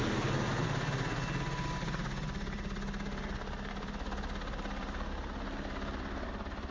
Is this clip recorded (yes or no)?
yes